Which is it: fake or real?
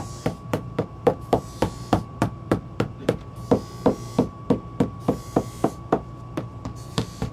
fake